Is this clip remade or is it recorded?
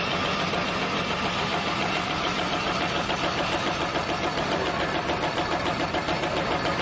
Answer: recorded